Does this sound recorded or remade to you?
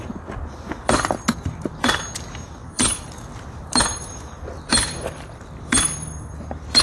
remade